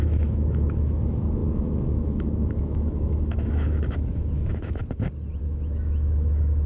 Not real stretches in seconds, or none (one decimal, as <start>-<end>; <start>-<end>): 0.0-4.8; 5.4-6.7